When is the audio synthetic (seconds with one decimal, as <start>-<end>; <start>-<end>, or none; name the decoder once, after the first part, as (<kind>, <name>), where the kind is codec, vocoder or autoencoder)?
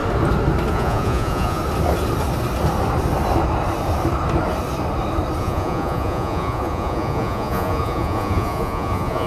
0.7-1.6 (vocoder, Vocos); 5.4-9.3